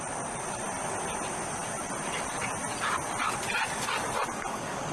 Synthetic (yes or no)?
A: no